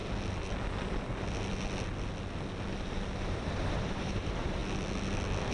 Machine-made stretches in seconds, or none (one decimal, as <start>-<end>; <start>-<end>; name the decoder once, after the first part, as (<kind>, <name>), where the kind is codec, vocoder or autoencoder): 3.3-4.6 (vocoder, BigVGAN v2)